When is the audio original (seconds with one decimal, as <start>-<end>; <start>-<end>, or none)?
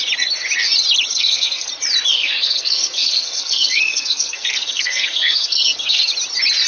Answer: 0.0-1.1; 1.7-2.1; 6.1-6.7